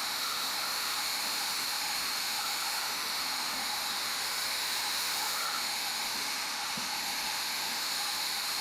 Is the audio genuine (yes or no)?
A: no